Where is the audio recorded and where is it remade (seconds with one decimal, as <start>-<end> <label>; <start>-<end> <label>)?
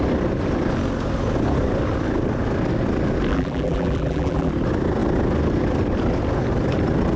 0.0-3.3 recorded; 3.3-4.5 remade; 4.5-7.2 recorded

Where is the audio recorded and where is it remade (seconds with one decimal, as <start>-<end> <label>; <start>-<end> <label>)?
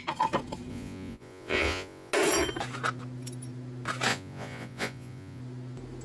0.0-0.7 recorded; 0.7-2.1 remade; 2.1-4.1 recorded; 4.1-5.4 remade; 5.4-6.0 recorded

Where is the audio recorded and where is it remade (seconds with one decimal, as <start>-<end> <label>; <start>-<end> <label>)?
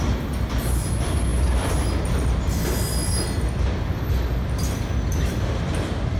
0.0-6.2 recorded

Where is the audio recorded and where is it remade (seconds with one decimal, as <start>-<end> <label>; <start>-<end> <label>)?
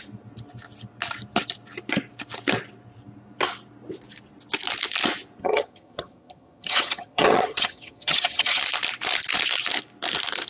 0.0-5.4 recorded; 5.4-8.6 remade; 8.6-10.5 recorded